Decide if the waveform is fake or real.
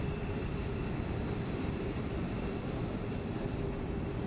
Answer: fake